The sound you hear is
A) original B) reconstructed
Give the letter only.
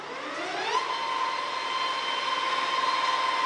A